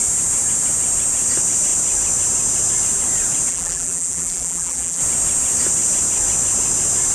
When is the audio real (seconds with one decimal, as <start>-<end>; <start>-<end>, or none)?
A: 0.0-3.5; 5.0-7.1